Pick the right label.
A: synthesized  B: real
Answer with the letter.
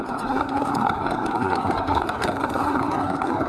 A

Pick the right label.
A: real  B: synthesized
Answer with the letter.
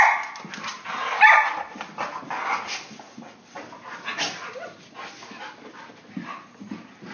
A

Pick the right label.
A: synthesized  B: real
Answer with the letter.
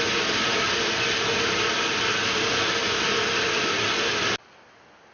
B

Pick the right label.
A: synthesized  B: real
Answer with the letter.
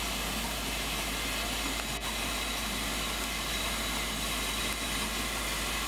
B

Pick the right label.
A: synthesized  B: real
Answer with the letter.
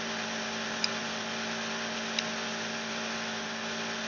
B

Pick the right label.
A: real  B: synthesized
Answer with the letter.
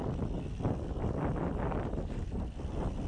B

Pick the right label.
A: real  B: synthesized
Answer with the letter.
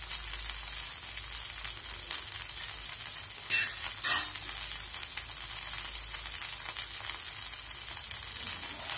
A